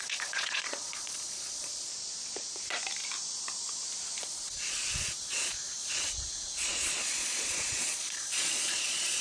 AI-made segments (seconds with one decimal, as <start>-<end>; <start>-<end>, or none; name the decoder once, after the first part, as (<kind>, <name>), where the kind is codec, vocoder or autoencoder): 0.0-1.9 (vocoder, Vocos); 4.2-9.2